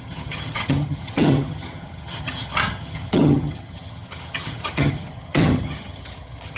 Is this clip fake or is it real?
fake